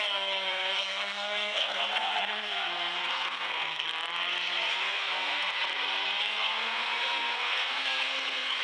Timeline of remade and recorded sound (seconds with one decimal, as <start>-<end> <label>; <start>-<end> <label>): 0.0-3.9 remade; 3.9-4.7 recorded; 4.7-5.7 remade; 5.7-6.2 recorded; 6.2-8.6 remade